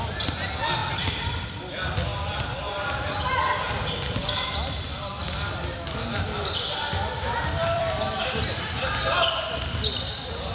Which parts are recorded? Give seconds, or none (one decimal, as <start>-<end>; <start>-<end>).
0.0-0.8; 1.6-7.6; 8.1-10.5